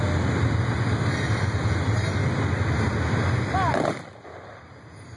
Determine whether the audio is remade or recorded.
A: recorded